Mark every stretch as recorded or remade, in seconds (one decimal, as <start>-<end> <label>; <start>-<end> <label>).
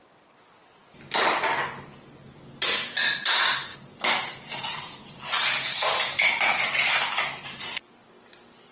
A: 0.0-3.7 recorded; 3.7-7.9 remade; 7.9-8.7 recorded